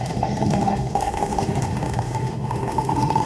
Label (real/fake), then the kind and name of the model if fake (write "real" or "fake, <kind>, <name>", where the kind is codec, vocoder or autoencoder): fake, autoencoder, DAC-VAE